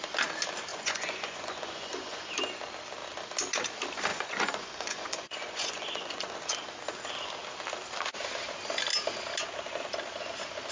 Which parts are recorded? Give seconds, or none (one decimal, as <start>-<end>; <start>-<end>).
0.0-0.7; 2.3-4.1; 6.4-10.7